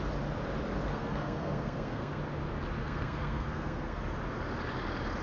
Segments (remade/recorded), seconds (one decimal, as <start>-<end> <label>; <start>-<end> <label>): 0.0-0.9 recorded; 0.9-2.2 remade; 2.2-2.8 recorded; 2.8-4.0 remade; 4.0-5.2 recorded